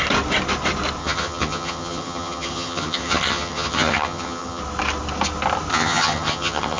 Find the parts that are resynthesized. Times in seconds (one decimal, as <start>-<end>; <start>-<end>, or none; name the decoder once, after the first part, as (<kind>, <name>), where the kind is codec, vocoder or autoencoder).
1.0-4.6 (vocoder, HiFi-GAN); 5.7-6.8